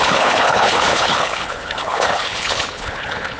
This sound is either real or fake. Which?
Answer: fake